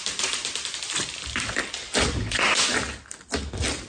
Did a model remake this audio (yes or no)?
no